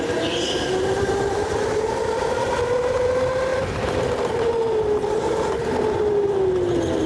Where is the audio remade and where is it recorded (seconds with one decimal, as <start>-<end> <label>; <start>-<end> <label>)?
0.0-1.4 recorded; 1.4-3.1 remade; 3.1-3.5 recorded; 3.5-6.5 remade; 6.5-7.1 recorded